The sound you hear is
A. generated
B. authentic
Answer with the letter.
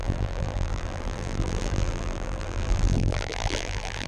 A